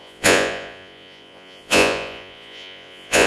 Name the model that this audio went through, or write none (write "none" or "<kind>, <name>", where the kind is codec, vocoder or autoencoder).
vocoder, Vocos